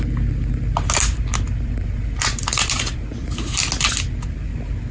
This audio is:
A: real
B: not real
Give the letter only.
A